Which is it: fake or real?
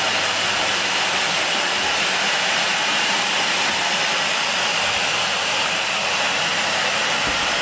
fake